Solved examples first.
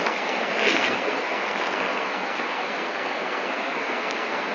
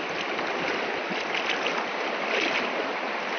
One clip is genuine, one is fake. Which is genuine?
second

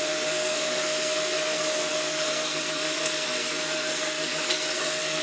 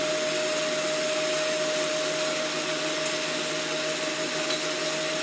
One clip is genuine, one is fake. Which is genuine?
second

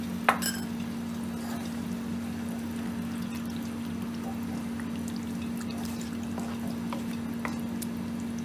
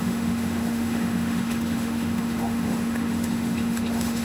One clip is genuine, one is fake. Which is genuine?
first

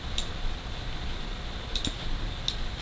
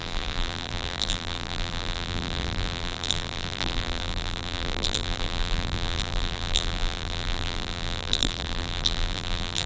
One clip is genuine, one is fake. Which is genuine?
first